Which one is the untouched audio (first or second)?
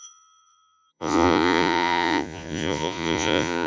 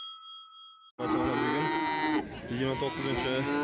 second